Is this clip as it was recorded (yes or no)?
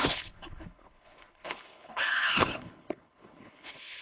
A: no